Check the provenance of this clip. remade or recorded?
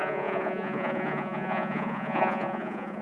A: remade